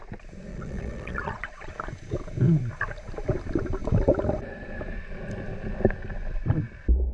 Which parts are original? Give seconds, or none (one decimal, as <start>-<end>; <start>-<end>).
0.0-0.5; 1.7-7.1